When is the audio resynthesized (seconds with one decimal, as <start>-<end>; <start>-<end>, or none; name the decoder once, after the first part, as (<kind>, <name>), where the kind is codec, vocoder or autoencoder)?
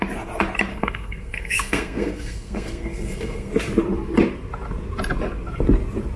0.7-3.5 (codec, SNAC)